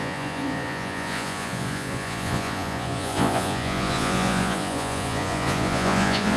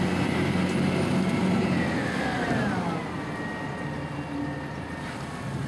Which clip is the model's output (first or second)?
first